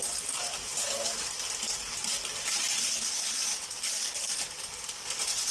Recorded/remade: recorded